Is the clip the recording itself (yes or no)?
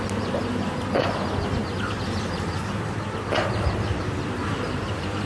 yes